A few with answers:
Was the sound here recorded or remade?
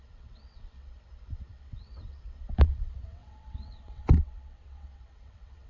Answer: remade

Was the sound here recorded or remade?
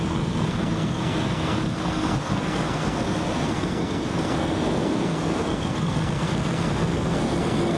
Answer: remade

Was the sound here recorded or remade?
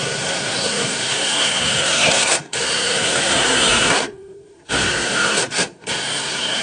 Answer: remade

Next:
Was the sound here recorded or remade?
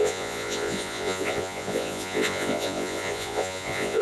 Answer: remade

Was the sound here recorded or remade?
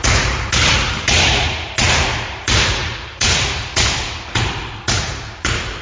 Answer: remade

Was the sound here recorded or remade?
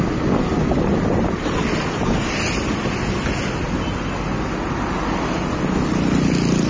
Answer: recorded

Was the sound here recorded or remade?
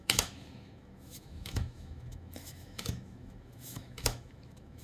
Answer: remade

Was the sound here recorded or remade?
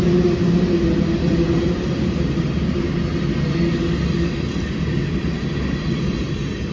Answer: recorded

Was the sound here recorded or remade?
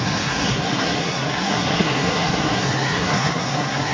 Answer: remade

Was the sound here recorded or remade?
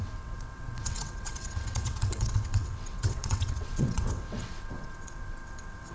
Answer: remade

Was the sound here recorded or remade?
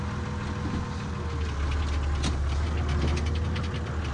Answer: recorded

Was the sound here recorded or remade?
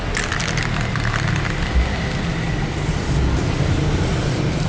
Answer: recorded